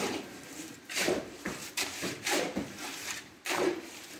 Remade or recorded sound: remade